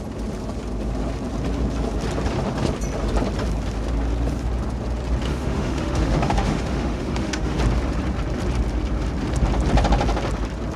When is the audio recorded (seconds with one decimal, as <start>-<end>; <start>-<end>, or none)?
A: 0.0-5.3; 7.6-10.8